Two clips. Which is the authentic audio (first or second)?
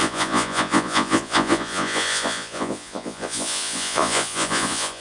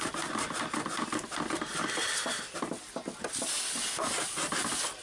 second